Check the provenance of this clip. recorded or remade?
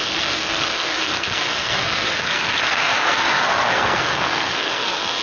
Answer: remade